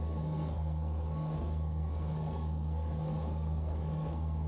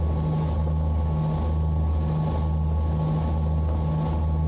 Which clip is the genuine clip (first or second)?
second